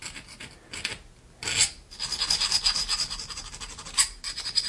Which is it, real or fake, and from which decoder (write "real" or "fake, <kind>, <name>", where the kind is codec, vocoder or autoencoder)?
real